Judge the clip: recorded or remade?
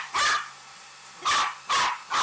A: recorded